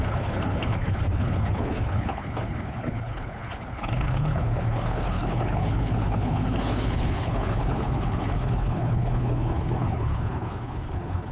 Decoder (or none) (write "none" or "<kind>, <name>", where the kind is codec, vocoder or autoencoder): codec, HILCodec